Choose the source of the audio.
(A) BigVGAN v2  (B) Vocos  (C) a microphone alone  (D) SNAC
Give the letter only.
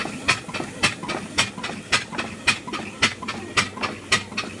C